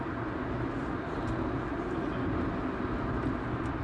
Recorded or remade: recorded